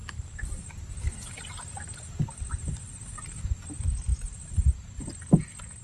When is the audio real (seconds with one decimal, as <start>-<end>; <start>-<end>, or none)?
3.5-4.1; 5.0-5.8